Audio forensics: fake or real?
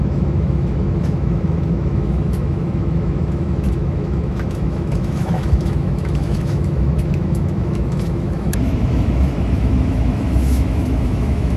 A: fake